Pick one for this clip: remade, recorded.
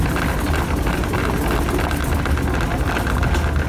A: recorded